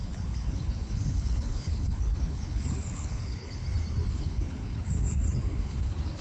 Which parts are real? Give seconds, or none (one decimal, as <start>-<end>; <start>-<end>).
3.6-4.1